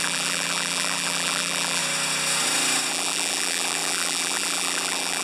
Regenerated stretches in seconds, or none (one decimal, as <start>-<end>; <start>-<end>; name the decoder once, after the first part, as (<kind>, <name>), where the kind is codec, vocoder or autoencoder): 0.0-1.8 (vocoder, BigVGAN v2); 2.9-5.2